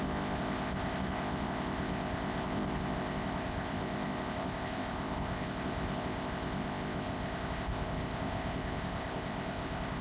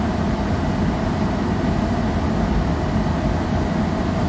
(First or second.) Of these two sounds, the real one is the second